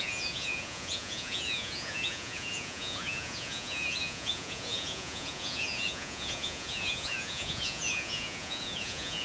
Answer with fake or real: fake